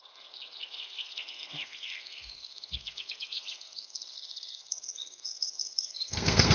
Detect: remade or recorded remade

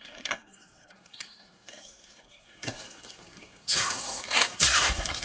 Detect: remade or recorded remade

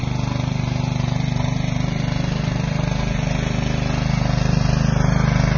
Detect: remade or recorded recorded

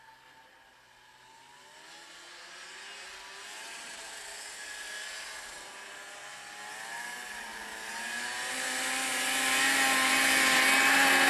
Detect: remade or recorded recorded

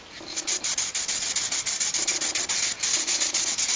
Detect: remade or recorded recorded